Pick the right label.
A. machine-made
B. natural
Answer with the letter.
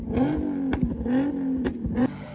A